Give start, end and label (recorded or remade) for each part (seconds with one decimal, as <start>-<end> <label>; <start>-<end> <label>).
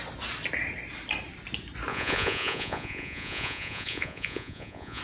0.0-1.9 recorded; 1.9-5.0 remade